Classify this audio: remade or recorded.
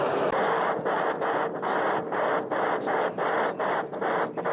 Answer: recorded